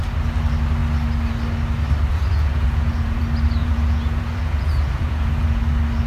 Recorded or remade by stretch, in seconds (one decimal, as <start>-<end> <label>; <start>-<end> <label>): 0.0-2.1 recorded; 2.1-3.2 remade; 3.2-3.6 recorded; 3.6-5.6 remade; 5.6-6.1 recorded